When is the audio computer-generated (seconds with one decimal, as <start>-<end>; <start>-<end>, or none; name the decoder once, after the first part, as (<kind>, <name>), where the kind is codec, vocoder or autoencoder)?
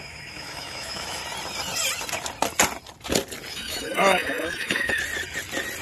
0.0-1.2 (autoencoder, DAC-VAE); 3.5-5.0